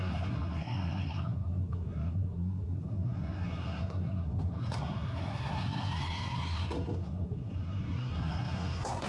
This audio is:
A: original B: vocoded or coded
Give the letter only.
B